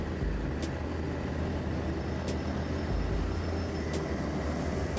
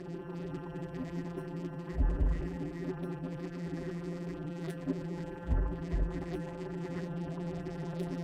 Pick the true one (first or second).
first